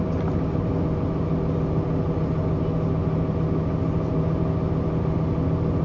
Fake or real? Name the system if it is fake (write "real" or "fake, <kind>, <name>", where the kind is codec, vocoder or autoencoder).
real